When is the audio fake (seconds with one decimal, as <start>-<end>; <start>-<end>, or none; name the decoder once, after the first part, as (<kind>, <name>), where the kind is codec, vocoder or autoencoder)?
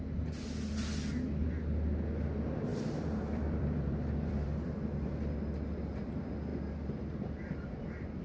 2.7-4.7 (vocoder, BigVGAN v2)